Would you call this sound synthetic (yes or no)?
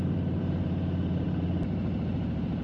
yes